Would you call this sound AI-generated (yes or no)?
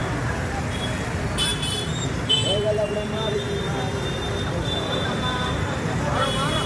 yes